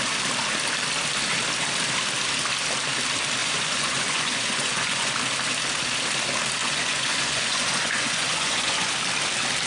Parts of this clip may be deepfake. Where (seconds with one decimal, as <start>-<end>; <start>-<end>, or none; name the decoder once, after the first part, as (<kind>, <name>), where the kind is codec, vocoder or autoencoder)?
3.4-5.1 (vocoder, Vocos); 6.6-8.9